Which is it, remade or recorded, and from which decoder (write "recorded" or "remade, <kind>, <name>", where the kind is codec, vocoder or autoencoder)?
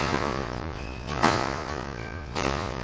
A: remade, vocoder, Vocos